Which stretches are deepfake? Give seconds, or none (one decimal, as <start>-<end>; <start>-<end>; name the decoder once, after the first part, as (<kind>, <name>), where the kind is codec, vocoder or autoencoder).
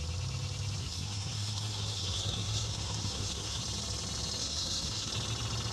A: 0.8-3.6 (codec, SNAC); 4.4-5.1